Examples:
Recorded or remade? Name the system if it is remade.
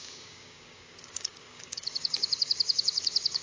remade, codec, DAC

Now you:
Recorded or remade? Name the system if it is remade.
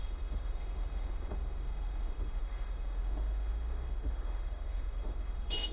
remade, autoencoder, DAC-VAE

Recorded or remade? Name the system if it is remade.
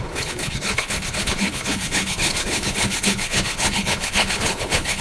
remade, codec, HILCodec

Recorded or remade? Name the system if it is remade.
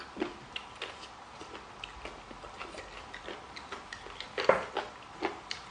recorded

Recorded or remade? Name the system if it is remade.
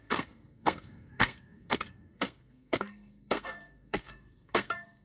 remade, codec, SNAC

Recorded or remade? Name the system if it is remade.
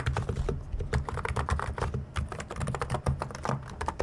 remade, vocoder, BigVGAN v2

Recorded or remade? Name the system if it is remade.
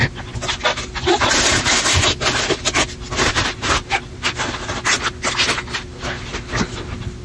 recorded